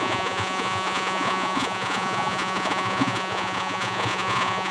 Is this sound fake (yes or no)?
yes